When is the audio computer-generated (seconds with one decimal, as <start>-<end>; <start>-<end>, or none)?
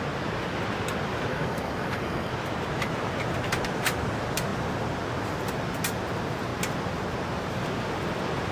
1.3-2.3